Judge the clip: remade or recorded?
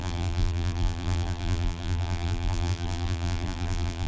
remade